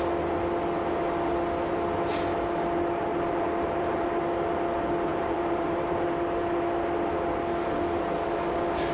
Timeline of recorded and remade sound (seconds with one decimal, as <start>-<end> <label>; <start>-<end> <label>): 0.0-3.1 recorded; 3.1-4.1 remade; 4.1-5.1 recorded; 5.1-6.1 remade; 6.1-8.9 recorded